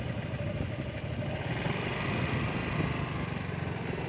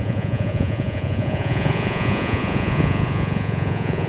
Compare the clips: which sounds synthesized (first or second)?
second